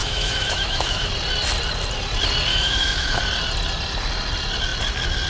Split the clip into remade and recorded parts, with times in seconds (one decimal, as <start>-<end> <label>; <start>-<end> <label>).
0.0-1.1 remade; 1.1-2.5 recorded; 2.5-3.2 remade; 3.2-5.3 recorded